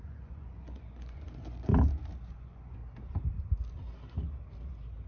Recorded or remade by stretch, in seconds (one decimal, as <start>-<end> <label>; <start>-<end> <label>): 0.0-1.7 remade; 1.7-2.3 recorded; 2.3-2.8 remade; 2.8-5.1 recorded